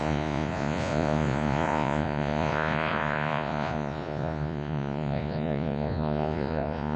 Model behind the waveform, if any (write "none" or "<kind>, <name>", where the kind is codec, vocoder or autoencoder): vocoder, Vocos